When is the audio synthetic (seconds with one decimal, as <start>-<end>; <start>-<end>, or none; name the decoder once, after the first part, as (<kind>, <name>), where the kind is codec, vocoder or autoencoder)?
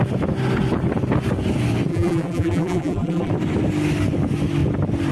1.9-3.3 (vocoder, BigVGAN v2)